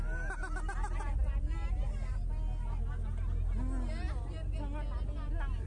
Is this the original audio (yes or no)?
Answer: yes